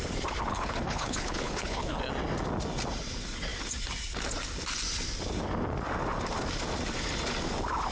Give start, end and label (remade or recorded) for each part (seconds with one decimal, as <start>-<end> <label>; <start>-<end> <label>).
0.0-0.5 recorded; 0.5-2.0 remade; 2.0-7.9 recorded